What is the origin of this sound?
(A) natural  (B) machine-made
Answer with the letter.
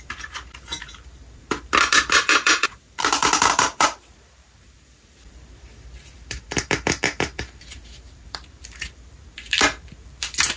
B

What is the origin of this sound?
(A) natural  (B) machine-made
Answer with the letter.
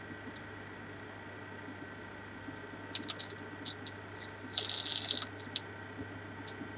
A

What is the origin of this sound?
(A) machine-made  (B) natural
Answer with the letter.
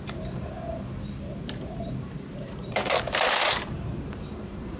A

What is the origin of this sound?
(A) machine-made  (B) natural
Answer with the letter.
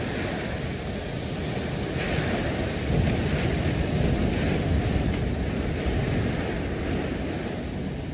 B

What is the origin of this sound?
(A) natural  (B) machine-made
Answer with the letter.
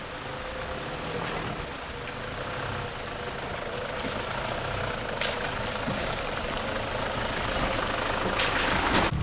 A